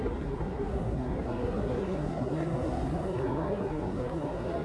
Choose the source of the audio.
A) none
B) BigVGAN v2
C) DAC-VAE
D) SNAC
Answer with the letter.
D